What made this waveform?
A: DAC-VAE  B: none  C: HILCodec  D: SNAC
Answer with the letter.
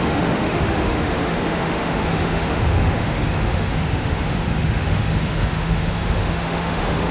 A